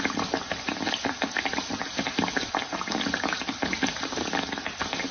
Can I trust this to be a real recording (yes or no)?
yes